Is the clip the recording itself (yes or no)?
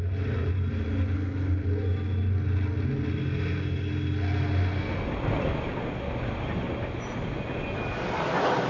yes